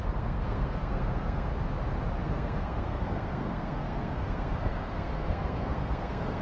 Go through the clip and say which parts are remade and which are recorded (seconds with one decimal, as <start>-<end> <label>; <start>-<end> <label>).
0.0-1.5 remade; 1.5-2.2 recorded; 2.2-6.4 remade